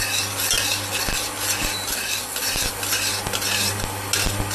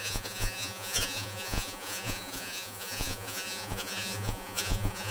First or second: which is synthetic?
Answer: second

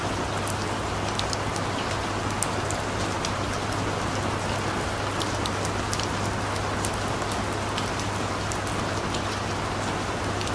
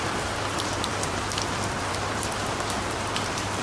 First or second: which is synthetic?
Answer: second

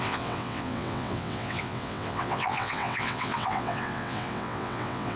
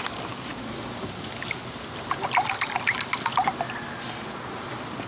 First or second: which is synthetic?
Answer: first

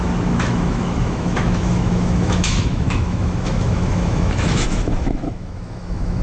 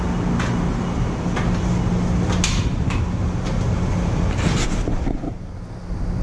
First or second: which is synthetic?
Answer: first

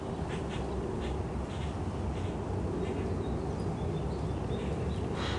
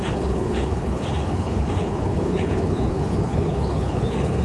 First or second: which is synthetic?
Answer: second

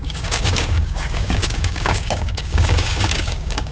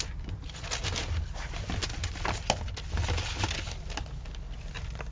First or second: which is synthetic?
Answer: first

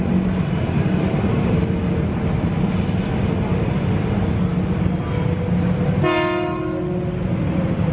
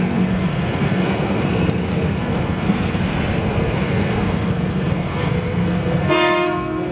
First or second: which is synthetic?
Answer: second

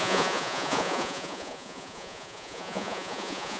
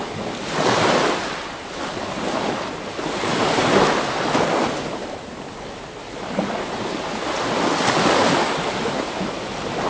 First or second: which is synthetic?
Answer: first